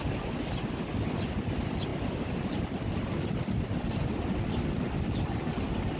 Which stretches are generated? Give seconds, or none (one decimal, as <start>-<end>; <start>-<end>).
none

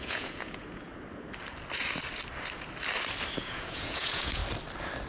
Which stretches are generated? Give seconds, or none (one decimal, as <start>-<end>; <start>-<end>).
0.0-0.9; 3.3-4.4

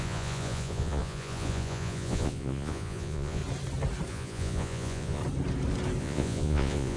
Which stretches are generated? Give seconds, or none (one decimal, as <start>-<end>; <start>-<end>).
0.0-3.4; 4.1-5.2; 6.0-7.0

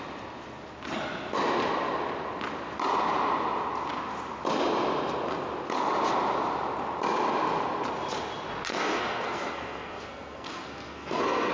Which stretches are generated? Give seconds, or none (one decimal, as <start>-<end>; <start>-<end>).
8.7-11.5

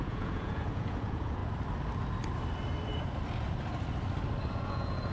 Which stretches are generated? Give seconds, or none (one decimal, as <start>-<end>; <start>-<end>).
0.0-1.4; 4.5-5.1

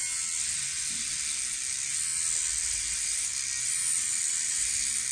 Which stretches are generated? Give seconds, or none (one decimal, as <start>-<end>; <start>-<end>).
2.4-5.1

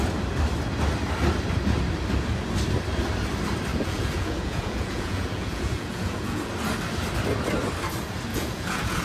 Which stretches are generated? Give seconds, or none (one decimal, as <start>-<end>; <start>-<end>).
3.7-6.5; 8.3-9.0

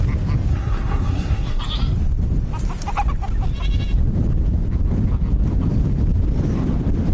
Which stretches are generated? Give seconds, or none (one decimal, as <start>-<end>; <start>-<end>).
0.5-1.6